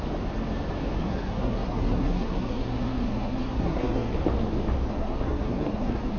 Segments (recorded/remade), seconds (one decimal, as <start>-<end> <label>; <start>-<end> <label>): 0.0-1.0 recorded; 1.0-4.1 remade; 4.1-4.9 recorded; 4.9-6.2 remade